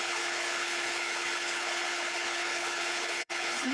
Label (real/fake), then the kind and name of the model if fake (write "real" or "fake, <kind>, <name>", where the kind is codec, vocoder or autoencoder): fake, codec, HILCodec